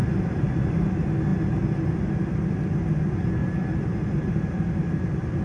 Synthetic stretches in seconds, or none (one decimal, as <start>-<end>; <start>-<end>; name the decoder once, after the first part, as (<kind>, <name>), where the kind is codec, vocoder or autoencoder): 0.0-0.8 (vocoder, BigVGAN v2); 3.4-4.3